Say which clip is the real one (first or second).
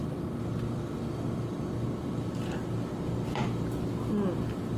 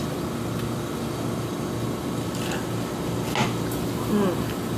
second